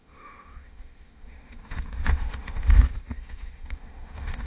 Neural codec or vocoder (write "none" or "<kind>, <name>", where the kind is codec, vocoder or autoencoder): autoencoder, DAC-VAE